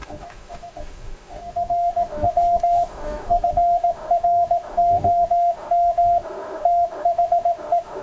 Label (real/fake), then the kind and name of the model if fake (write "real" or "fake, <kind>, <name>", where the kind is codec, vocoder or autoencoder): fake, autoencoder, DAC-VAE